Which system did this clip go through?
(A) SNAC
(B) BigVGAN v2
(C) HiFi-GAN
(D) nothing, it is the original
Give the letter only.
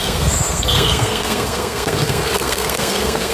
A